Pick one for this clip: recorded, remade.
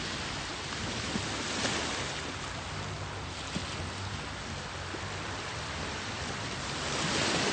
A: recorded